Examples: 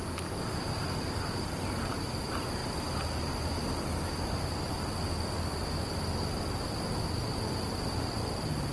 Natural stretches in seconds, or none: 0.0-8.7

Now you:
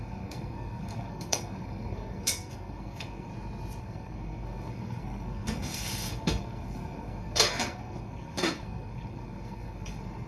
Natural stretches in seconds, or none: 3.3-3.8

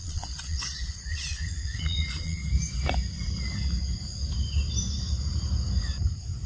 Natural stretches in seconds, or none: 2.4-6.5

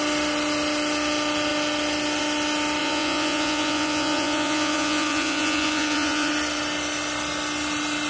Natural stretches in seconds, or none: 0.0-2.8; 6.3-8.1

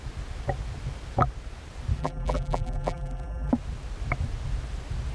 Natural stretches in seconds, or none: 0.0-2.0; 3.5-5.1

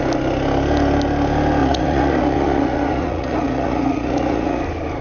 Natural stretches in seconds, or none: 0.0-1.6; 4.6-5.0

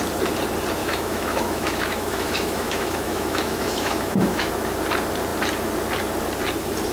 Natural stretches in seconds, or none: 0.0-0.8; 4.5-6.9